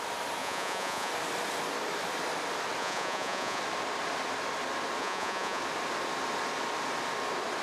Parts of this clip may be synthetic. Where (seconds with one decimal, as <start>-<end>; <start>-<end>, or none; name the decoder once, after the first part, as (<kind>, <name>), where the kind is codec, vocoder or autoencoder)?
0.4-1.1 (vocoder, Vocos); 2.8-3.6; 5.0-5.6